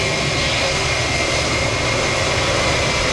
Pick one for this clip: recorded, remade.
recorded